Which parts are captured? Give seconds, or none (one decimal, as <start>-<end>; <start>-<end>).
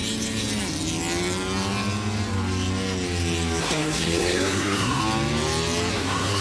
0.0-3.6; 5.0-5.9